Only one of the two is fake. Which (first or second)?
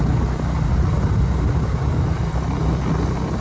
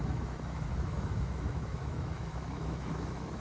second